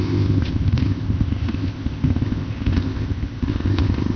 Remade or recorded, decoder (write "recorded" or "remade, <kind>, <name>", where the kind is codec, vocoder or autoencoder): remade, codec, ZipCodec